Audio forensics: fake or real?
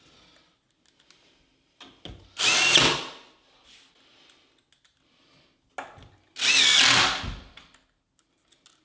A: real